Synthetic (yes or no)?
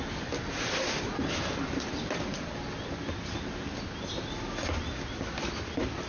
no